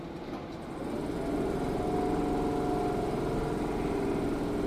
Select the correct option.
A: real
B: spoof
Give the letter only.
A